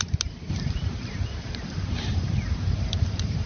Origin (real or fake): fake